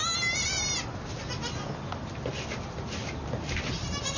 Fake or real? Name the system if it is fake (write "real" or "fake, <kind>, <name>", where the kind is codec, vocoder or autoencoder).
real